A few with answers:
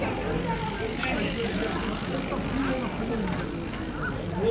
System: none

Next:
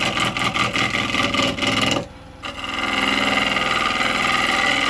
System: none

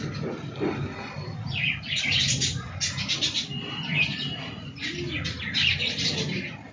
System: none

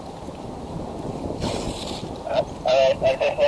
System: none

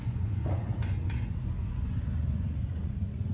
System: vocoder, Vocos